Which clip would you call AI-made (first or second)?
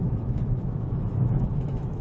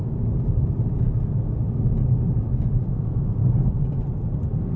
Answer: first